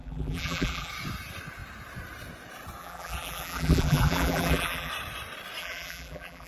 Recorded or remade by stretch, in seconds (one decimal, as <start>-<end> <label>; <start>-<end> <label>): 0.0-0.9 remade; 0.9-2.8 recorded; 2.8-4.9 remade; 4.9-5.6 recorded; 5.6-6.5 remade